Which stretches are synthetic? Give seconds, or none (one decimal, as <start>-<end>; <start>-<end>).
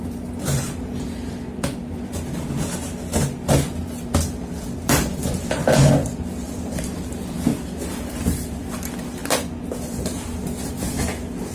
0.0-1.8; 4.1-9.2